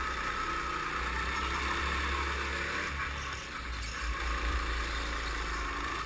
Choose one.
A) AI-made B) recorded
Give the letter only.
B